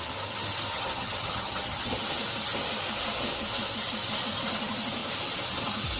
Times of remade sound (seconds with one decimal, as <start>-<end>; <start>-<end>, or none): 0.7-2.0